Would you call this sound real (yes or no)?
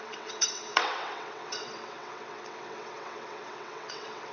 no